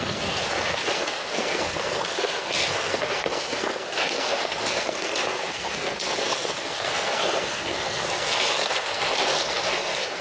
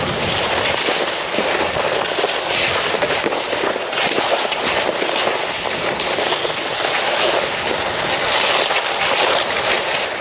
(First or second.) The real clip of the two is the second